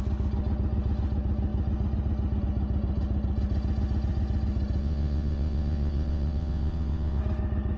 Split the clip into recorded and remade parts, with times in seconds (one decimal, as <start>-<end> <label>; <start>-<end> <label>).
0.0-4.8 recorded; 4.8-7.2 remade; 7.2-7.8 recorded